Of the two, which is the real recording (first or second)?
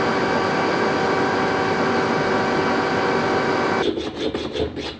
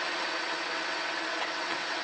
first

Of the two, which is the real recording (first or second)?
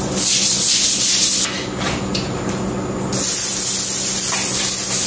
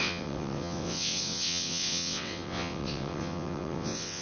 first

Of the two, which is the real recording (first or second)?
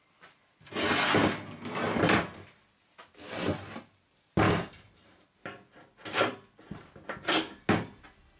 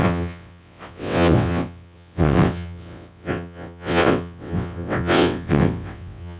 first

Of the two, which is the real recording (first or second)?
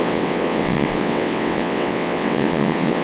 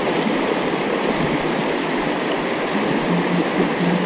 second